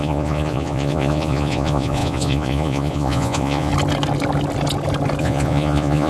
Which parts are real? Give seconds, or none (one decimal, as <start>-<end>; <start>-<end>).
3.7-5.2